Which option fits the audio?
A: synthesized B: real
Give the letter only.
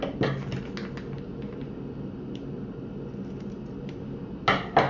B